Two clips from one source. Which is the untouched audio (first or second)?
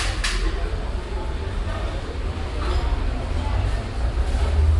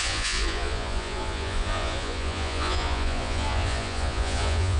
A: first